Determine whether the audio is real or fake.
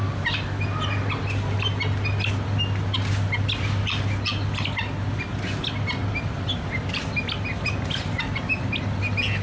real